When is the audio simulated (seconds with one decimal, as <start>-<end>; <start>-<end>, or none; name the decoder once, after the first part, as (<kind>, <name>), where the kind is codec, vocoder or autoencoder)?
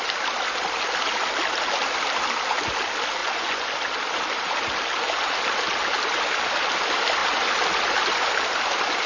3.2-3.7 (vocoder, Vocos)